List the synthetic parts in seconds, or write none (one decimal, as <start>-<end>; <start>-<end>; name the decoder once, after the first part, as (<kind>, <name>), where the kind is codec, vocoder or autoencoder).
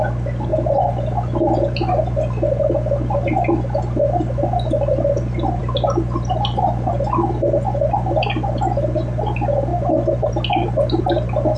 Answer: 5.6-6.9 (vocoder, BigVGAN v2)